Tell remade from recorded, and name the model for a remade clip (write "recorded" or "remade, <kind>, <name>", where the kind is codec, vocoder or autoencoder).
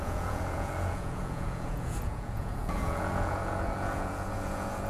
remade, vocoder, Vocos